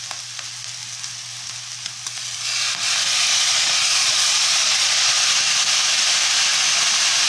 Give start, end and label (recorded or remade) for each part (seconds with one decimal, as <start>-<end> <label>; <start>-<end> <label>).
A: 0.0-3.3 recorded; 3.3-5.2 remade; 5.2-7.3 recorded